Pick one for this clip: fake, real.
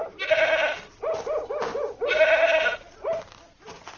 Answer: real